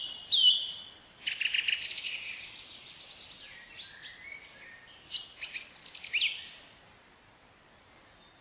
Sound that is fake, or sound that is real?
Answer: real